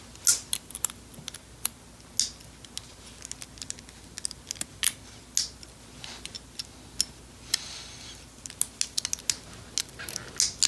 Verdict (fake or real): real